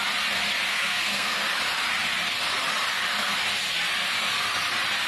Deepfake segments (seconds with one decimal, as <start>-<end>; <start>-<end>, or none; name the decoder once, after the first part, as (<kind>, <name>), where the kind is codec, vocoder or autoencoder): 0.7-1.4 (codec, SNAC)